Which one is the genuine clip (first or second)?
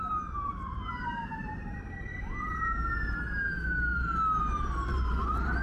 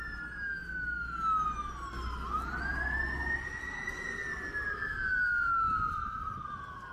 second